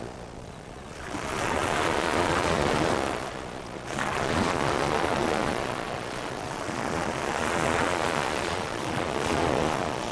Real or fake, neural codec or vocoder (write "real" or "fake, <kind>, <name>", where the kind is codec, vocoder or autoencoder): fake, vocoder, Vocos